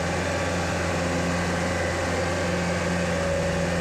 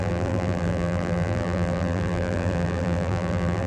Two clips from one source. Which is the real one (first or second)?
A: first